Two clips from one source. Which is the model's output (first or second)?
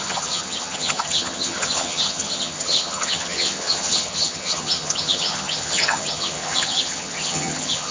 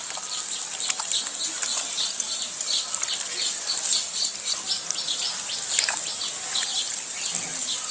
first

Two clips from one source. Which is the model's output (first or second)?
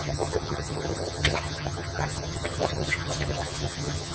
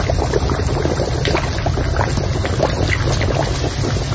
first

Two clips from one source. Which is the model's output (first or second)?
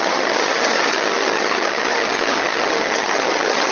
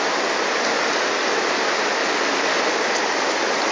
first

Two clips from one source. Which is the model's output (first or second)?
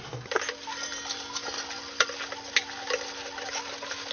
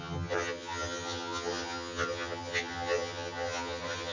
second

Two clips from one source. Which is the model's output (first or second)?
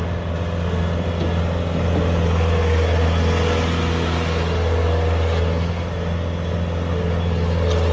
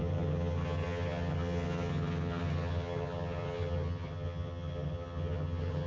second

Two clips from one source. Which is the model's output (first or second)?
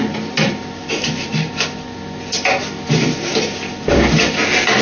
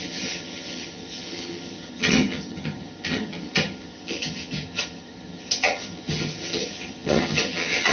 second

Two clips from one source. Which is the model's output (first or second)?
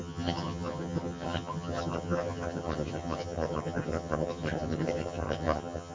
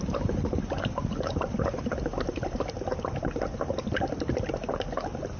first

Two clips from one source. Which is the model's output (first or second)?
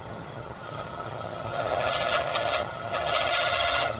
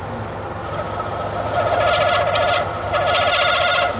first